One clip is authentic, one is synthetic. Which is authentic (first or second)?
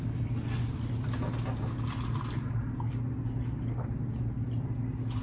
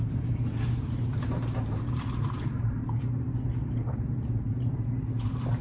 first